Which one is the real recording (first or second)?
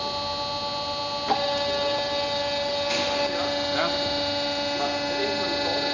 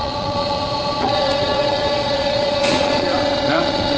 first